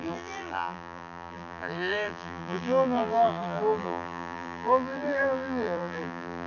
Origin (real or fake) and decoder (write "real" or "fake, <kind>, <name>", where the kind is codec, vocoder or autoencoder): fake, vocoder, BigVGAN v2